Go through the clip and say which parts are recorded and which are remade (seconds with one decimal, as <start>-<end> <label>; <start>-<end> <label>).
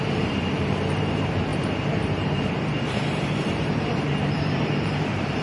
0.0-5.4 remade